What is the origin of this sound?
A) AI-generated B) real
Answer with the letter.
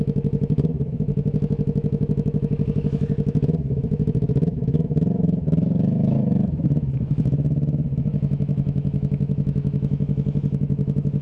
A